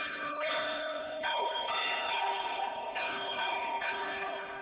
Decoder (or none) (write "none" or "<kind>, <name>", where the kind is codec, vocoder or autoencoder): codec, HILCodec